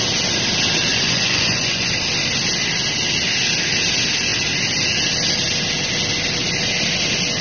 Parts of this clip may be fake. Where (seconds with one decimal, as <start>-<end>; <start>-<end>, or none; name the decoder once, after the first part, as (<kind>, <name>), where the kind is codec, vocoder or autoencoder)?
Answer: 0.9-1.9 (vocoder, Vocos)